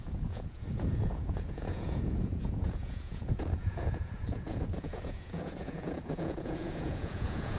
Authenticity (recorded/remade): remade